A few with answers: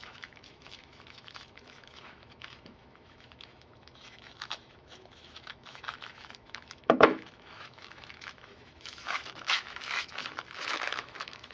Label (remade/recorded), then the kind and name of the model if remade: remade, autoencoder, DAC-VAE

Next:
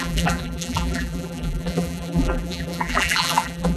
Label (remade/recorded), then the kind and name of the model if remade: remade, vocoder, BigVGAN v2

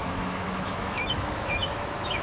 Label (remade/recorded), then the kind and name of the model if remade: remade, autoencoder, DAC-VAE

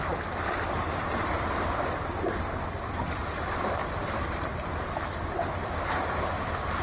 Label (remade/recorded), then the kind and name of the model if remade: remade, vocoder, BigVGAN v2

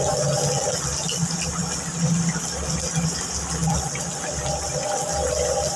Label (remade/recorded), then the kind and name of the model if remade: recorded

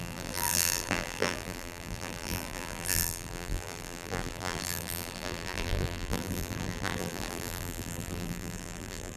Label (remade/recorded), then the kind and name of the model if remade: remade, vocoder, BigVGAN v2